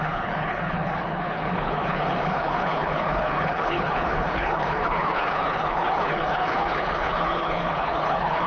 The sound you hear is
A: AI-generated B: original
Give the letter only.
A